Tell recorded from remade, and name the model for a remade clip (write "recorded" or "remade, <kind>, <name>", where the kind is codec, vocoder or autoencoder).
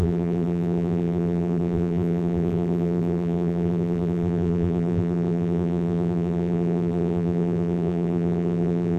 remade, vocoder, BigVGAN v2